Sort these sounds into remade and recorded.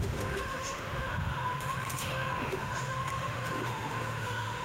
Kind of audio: remade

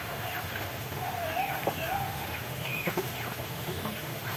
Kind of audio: remade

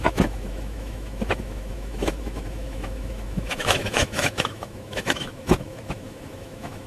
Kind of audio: remade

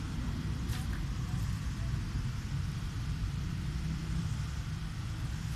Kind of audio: recorded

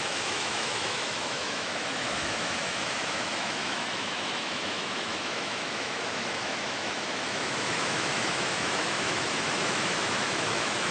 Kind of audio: remade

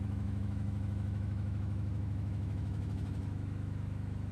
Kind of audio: remade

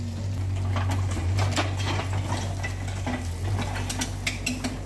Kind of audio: recorded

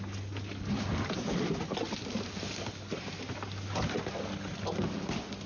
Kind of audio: recorded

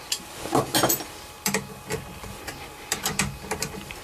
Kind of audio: recorded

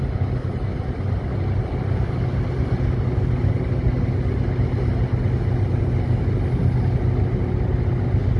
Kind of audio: recorded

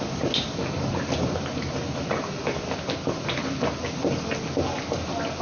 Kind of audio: recorded